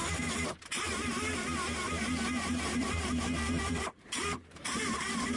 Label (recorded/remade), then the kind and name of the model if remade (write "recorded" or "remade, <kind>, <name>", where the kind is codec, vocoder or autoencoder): remade, vocoder, BigVGAN v2